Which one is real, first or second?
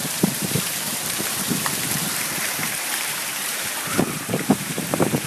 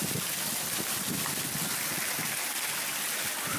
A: second